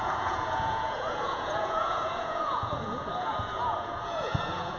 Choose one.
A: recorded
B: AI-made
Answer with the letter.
B